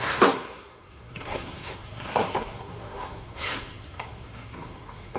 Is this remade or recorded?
remade